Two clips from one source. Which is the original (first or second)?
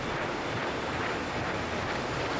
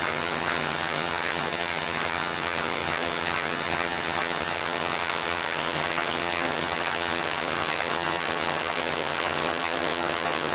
first